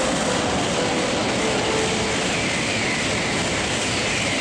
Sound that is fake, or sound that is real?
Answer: real